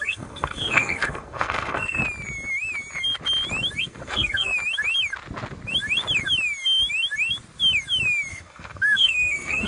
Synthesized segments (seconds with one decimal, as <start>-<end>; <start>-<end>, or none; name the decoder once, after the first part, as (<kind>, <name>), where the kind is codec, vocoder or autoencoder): 0.0-2.0 (codec, SNAC); 3.8-4.5; 8.3-9.7